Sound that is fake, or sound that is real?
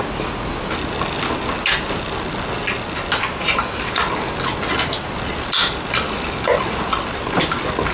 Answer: real